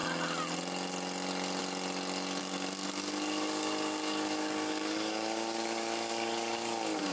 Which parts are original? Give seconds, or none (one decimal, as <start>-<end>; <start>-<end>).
0.0-2.4